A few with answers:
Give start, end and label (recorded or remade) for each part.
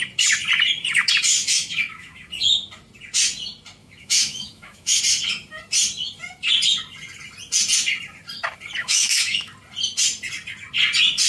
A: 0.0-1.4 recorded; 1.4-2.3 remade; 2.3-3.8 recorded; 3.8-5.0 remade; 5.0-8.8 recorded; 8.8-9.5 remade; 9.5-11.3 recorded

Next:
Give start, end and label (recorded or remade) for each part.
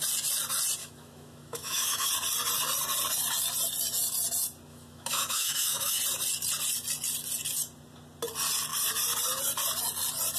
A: 0.0-0.8 recorded; 0.8-2.1 remade; 2.1-4.7 recorded; 4.7-6.0 remade; 6.0-10.4 recorded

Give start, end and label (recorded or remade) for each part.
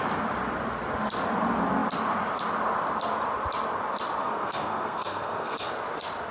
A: 0.0-4.2 recorded; 4.2-5.7 remade; 5.7-6.3 recorded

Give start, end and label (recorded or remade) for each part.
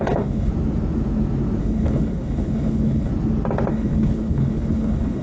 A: 0.0-0.5 remade; 0.5-1.6 recorded; 1.6-3.1 remade; 3.1-3.7 recorded; 3.7-5.2 remade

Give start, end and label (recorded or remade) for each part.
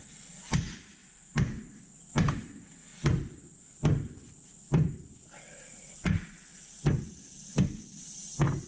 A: 0.0-8.7 recorded